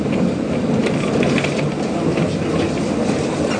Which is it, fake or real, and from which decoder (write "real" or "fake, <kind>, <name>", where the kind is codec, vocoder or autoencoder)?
real